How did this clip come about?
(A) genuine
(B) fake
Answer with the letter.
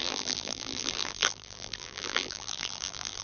B